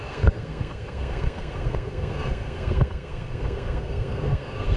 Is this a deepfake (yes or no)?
yes